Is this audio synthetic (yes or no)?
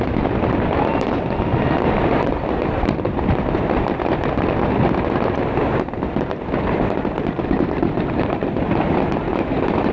yes